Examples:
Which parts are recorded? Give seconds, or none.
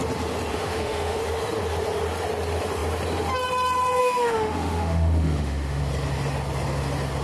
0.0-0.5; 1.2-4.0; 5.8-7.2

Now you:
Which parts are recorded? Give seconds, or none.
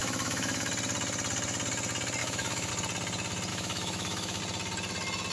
0.7-2.2; 2.7-3.5; 4.4-5.3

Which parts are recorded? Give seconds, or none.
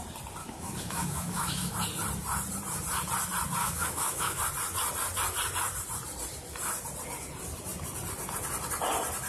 0.0-0.4; 1.7-3.6; 4.4-9.3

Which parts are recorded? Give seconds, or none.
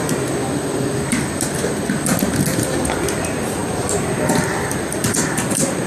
0.0-5.9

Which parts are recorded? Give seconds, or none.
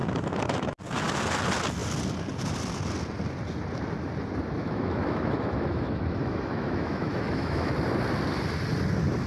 0.8-4.6; 7.7-9.3